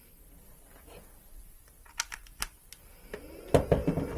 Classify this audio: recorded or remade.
recorded